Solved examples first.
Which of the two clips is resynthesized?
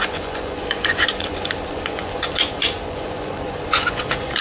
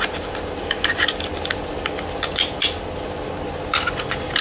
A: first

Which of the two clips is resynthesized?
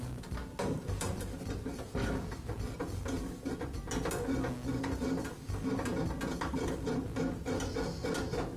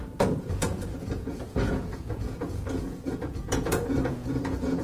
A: second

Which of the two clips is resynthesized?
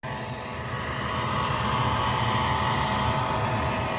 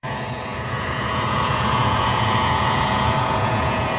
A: second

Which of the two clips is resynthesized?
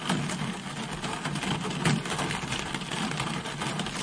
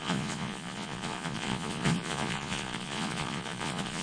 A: second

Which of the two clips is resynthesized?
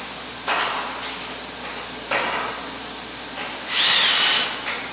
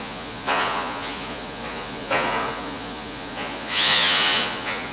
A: second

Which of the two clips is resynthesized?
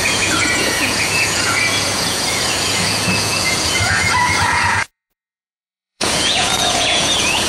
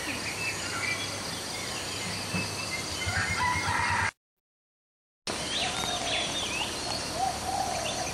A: first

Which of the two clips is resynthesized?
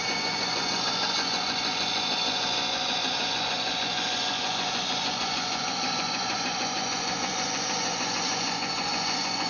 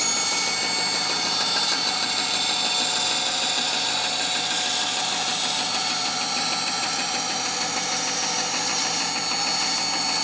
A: first